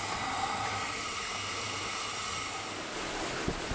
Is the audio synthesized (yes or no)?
no